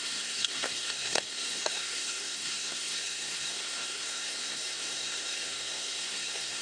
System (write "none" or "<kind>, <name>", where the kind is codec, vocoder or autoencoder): codec, SNAC